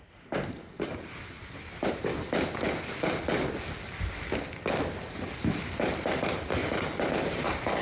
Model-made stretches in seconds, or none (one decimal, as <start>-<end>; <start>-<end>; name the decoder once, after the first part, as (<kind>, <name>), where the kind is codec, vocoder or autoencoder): 0.0-2.1 (vocoder, BigVGAN v2); 5.4-7.8